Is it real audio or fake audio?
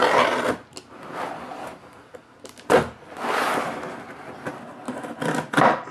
real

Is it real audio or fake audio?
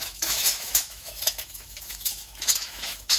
fake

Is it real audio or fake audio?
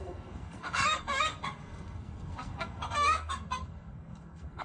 fake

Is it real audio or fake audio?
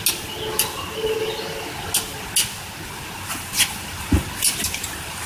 real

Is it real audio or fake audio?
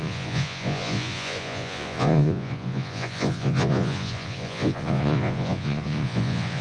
fake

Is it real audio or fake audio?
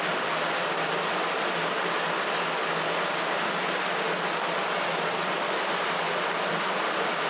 real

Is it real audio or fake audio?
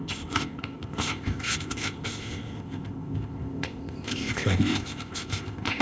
fake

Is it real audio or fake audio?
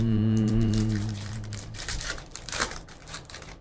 fake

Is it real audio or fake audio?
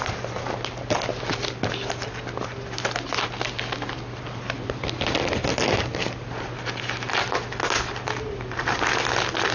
real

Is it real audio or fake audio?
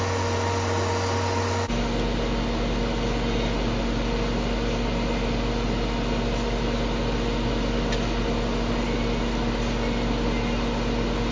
real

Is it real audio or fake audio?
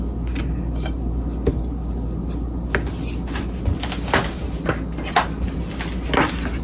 real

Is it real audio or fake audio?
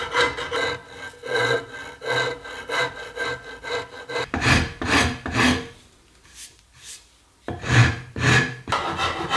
real